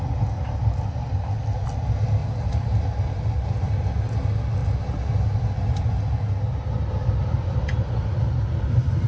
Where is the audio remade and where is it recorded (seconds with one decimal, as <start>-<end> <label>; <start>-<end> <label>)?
0.0-9.1 recorded